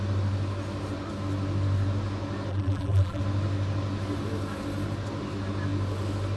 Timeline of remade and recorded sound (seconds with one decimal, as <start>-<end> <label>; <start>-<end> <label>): 0.0-2.5 recorded; 2.5-3.2 remade; 3.2-6.4 recorded